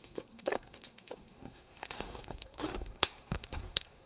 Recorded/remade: remade